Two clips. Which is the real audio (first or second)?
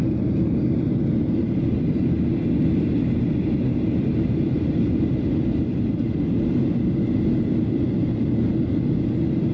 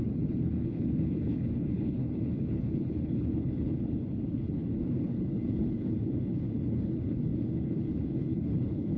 first